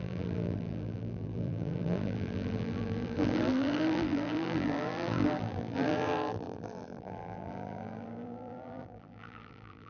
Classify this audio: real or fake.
fake